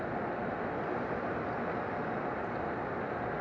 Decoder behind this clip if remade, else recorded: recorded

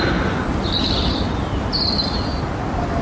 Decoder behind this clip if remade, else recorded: recorded